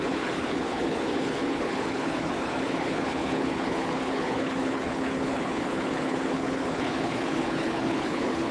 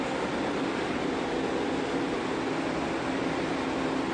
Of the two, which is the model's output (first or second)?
first